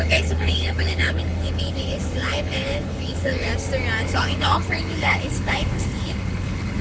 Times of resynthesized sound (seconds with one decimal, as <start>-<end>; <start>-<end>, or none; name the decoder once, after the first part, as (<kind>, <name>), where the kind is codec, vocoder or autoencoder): 0.0-3.5 (codec, HILCodec); 4.0-6.8